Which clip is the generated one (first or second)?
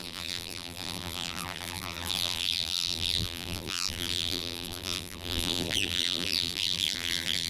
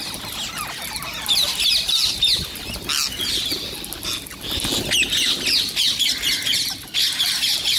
first